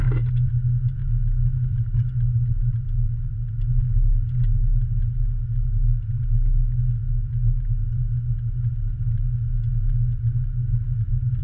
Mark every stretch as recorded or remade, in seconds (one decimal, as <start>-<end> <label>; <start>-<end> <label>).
0.0-11.4 recorded